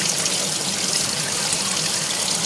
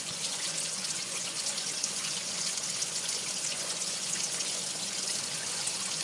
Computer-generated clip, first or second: second